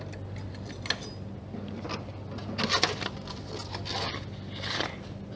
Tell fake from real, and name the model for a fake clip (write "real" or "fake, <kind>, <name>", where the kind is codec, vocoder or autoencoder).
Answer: real